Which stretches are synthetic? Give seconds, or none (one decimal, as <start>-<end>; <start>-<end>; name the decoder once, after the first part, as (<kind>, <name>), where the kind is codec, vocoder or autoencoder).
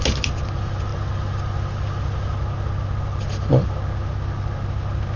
none